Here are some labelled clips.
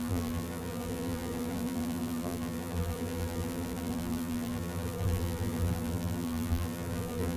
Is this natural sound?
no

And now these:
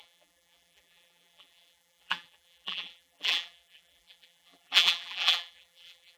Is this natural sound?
no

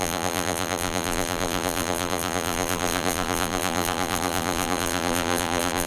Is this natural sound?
no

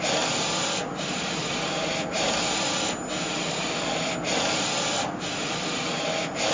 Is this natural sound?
no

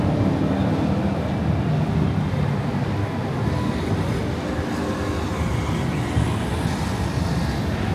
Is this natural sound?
yes